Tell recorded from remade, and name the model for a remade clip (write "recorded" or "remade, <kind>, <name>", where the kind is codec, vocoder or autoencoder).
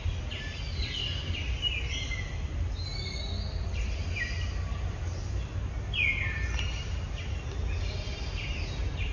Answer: recorded